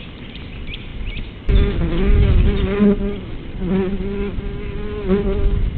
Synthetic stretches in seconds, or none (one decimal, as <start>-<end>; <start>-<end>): none